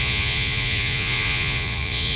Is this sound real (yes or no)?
no